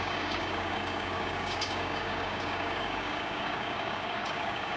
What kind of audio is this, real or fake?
fake